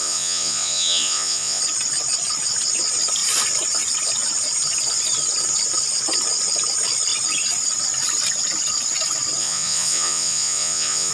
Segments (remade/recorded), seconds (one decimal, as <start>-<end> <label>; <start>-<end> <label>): 0.0-1.6 remade; 1.6-9.4 recorded; 9.4-11.1 remade